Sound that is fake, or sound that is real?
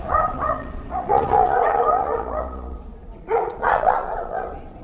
fake